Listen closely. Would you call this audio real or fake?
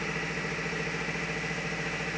real